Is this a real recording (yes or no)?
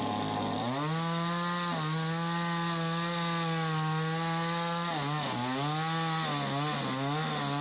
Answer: yes